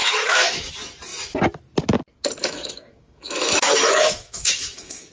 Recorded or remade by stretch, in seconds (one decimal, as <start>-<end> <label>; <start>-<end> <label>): 0.0-0.7 remade; 0.7-2.4 recorded; 2.4-5.1 remade